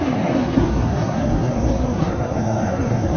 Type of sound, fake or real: fake